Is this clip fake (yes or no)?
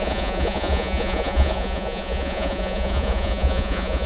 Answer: yes